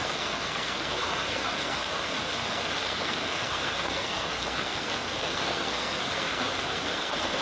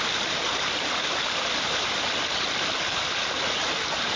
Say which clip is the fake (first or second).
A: first